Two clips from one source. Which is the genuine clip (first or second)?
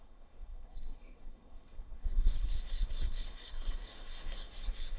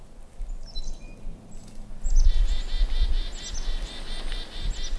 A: second